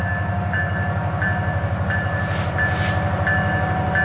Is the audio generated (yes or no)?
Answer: no